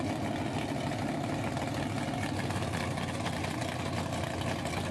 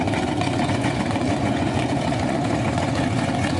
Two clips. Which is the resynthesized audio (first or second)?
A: second